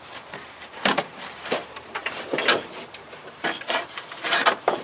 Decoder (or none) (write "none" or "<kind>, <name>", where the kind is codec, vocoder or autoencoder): vocoder, BigVGAN v2